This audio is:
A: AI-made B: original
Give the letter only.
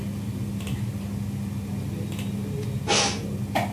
B